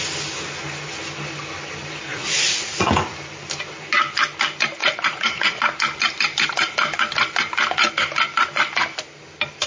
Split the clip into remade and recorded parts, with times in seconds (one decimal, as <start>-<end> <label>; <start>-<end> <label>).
0.0-2.1 recorded; 2.1-2.9 remade; 2.9-4.8 recorded; 4.8-5.6 remade; 5.6-9.7 recorded